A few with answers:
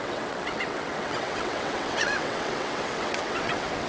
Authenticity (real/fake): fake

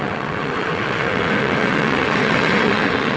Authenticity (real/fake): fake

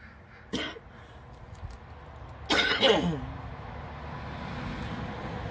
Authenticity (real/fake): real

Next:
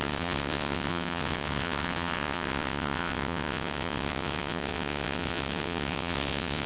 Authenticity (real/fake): fake